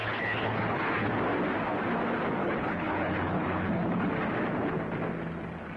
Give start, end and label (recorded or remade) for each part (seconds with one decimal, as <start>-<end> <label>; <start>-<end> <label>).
0.0-1.1 remade; 1.1-2.4 recorded; 2.4-4.1 remade; 4.1-5.8 recorded